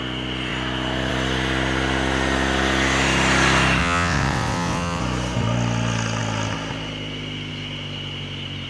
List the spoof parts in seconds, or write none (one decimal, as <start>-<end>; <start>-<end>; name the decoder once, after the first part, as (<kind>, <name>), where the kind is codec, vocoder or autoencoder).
3.8-5.0 (vocoder, WaveNeXt)